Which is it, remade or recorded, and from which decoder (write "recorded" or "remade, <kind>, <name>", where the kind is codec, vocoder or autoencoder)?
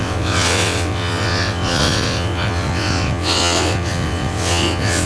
remade, vocoder, WaveNeXt